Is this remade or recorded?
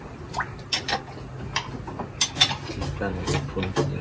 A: recorded